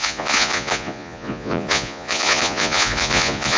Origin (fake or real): fake